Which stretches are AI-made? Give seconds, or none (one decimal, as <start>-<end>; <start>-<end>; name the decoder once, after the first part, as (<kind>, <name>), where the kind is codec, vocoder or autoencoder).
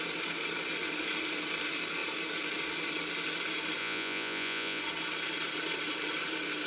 3.8-4.8 (vocoder, Vocos)